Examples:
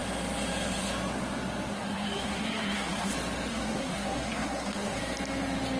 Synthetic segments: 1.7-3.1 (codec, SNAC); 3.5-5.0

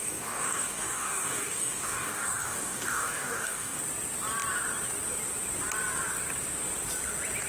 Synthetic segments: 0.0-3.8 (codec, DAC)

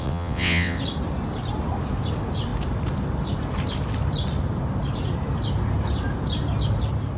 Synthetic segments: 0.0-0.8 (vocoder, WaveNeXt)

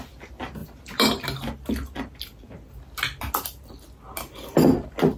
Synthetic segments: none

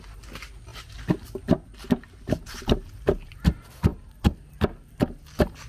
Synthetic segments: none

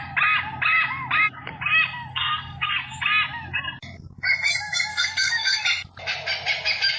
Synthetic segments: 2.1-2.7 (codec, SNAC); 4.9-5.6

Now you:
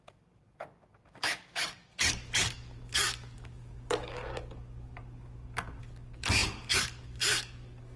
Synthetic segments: 0.0-8.0 (codec, DAC)

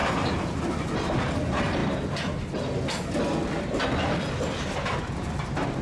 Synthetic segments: none